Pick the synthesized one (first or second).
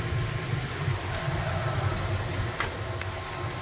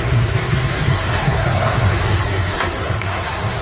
second